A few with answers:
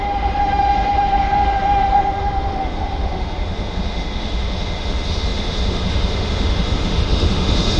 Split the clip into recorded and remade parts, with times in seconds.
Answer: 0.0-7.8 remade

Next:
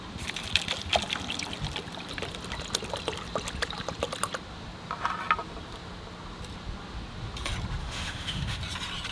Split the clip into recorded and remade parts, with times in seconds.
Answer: 0.0-7.8 recorded; 7.8-8.6 remade; 8.6-9.1 recorded

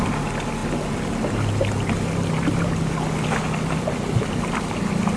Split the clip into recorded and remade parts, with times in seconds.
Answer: 0.0-5.2 recorded